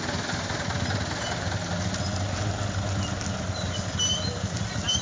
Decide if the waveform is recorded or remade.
recorded